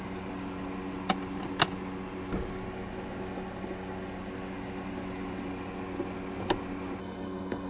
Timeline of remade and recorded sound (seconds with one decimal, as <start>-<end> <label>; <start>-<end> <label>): 0.0-7.0 recorded; 7.0-7.7 remade